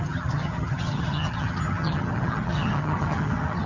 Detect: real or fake fake